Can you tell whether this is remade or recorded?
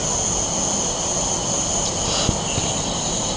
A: recorded